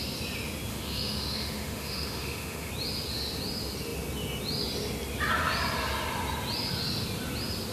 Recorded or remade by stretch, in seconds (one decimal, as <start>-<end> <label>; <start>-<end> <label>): 0.0-0.7 recorded; 0.7-2.7 remade; 2.7-7.7 recorded